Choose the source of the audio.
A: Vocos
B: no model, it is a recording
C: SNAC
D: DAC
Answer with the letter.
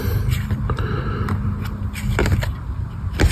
B